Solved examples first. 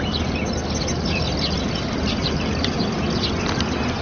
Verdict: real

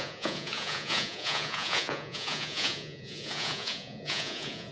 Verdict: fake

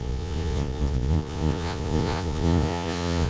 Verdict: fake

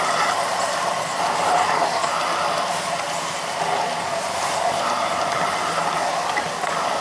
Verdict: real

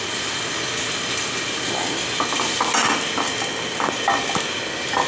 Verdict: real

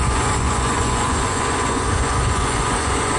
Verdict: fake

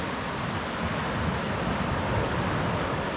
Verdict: real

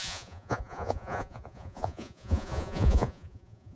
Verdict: fake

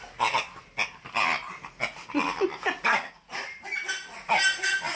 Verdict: real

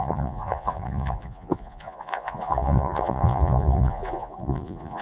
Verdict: fake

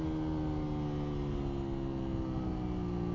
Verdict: real